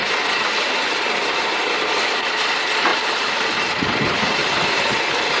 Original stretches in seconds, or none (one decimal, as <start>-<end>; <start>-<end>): 0.0-2.9; 3.7-4.4; 5.0-5.4